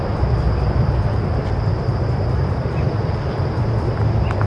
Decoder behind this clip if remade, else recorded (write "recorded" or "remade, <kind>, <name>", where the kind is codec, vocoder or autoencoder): recorded